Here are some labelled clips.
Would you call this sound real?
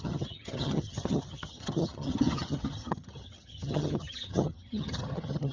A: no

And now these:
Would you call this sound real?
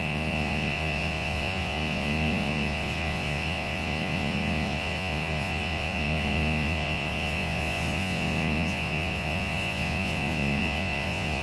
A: no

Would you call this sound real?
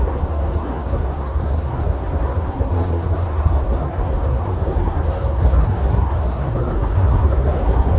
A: no